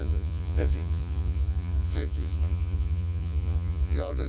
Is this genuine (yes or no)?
no